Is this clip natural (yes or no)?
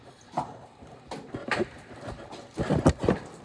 yes